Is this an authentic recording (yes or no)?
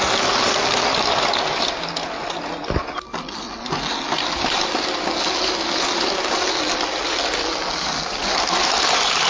yes